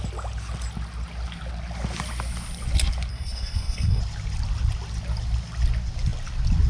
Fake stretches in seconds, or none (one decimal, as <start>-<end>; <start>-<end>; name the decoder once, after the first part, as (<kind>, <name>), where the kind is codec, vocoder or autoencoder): 3.1-4.0 (codec, SNAC)

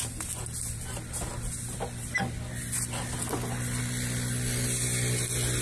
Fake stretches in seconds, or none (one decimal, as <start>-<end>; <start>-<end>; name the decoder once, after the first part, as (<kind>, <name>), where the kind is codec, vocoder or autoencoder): none

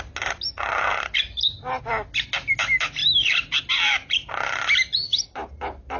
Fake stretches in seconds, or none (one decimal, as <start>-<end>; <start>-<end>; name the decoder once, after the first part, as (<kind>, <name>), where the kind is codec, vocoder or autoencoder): none

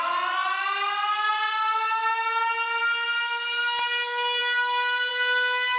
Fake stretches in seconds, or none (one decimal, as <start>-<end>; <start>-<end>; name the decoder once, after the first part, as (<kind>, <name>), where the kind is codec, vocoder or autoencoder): none

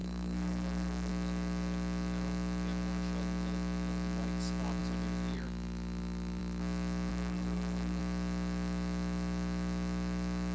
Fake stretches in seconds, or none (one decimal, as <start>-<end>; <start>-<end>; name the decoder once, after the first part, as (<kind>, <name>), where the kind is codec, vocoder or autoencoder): 0.0-1.1 (codec, SNAC); 7.1-8.0